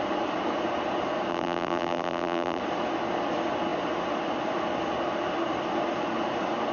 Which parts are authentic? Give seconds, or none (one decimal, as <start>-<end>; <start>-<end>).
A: 0.0-1.3; 2.6-6.7